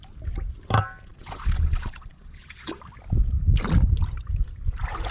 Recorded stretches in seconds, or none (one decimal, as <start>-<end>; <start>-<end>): 0.0-1.1; 2.8-5.1